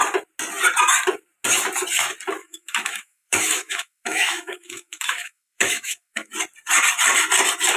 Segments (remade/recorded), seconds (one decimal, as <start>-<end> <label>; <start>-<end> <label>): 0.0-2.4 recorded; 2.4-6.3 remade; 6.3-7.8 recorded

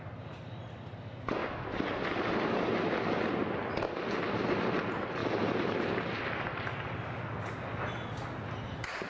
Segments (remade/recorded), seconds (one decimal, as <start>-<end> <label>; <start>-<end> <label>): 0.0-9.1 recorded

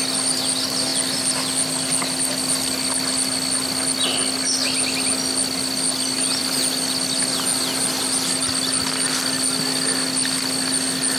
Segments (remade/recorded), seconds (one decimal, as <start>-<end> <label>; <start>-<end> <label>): 0.0-11.2 recorded

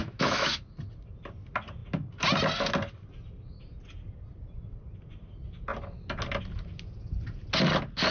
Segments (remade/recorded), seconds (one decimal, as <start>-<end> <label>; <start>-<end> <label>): 0.0-0.6 remade; 0.6-8.1 recorded

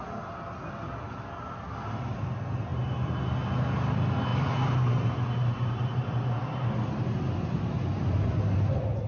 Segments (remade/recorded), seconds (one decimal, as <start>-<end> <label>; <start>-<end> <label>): 0.0-2.7 recorded; 2.7-3.2 remade; 3.2-4.3 recorded; 4.3-6.1 remade; 6.1-9.1 recorded